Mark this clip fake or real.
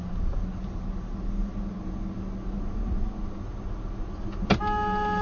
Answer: real